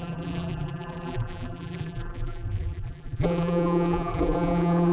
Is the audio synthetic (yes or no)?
yes